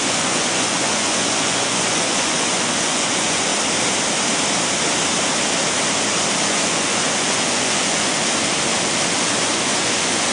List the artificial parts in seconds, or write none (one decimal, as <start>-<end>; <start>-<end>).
0.0-3.5; 6.4-8.2; 9.2-10.3